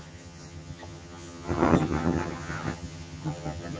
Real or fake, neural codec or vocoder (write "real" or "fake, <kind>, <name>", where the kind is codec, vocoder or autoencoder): fake, vocoder, HiFi-GAN